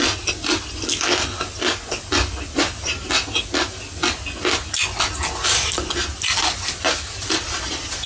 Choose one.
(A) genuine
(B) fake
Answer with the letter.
A